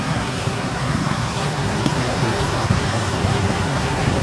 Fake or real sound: fake